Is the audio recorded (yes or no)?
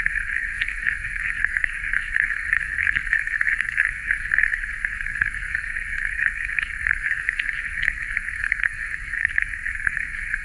no